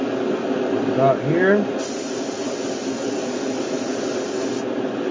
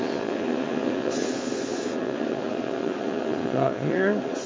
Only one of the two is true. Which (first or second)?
first